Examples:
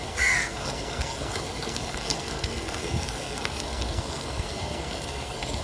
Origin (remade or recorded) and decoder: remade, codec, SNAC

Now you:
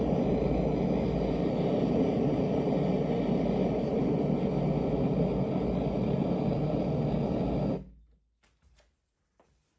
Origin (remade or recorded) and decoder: recorded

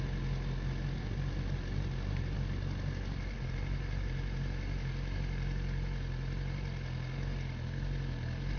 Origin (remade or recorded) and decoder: recorded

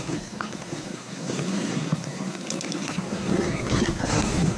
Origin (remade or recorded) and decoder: remade, codec, SNAC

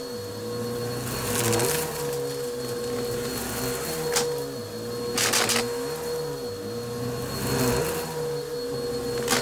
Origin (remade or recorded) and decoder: recorded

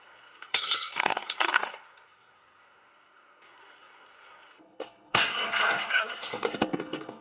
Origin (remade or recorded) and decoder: remade, codec, SNAC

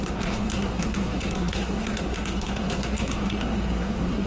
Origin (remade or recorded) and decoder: remade, codec, SNAC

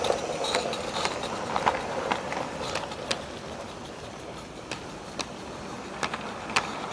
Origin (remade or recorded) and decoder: recorded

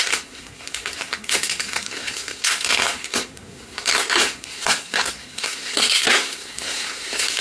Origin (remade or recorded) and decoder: remade, codec, SNAC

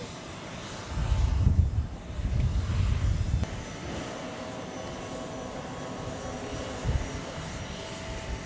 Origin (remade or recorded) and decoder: recorded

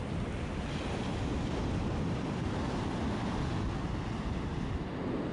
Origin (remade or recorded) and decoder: recorded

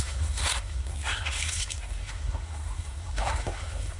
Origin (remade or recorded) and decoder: remade, codec, SNAC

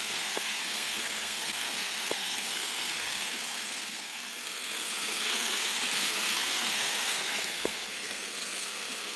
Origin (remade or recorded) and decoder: remade, codec, SNAC